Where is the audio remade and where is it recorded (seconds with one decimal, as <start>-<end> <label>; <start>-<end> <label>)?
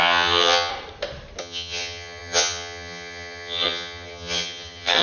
0.0-0.7 remade; 0.7-1.4 recorded; 1.4-5.0 remade